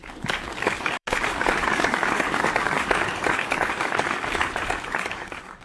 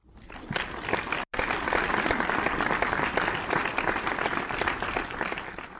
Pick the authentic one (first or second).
second